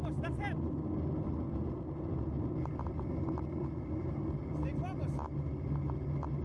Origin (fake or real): real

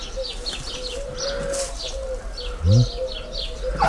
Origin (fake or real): real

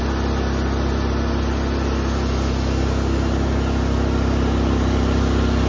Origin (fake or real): real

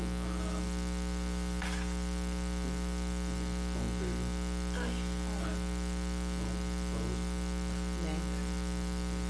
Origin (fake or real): real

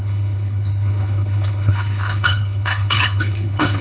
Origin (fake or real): fake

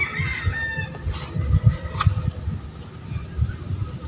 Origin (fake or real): real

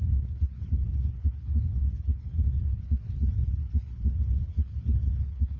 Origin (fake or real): fake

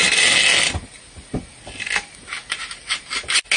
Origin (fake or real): real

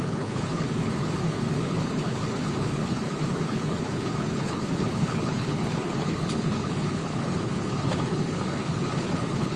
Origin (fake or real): fake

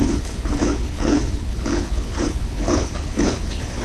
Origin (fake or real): fake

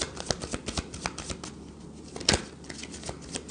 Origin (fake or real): real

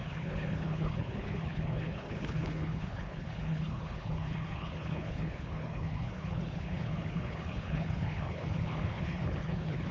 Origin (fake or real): fake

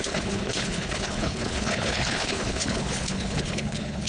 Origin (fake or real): fake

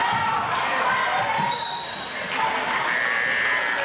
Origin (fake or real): real